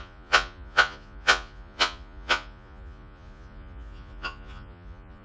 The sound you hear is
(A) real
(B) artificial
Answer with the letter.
B